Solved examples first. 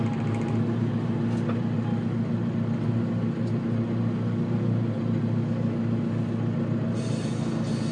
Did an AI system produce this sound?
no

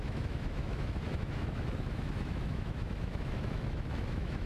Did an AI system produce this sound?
yes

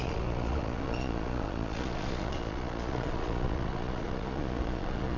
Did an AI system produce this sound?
yes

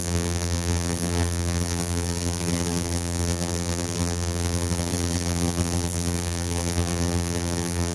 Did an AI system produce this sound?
yes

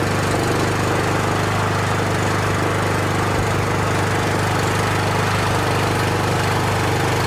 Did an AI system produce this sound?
no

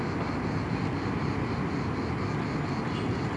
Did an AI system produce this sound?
no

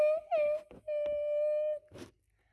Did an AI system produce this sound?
no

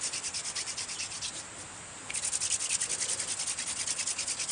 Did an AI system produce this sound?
no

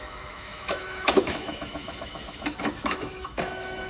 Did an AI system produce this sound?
yes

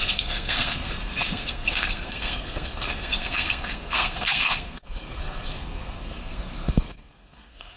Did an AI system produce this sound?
yes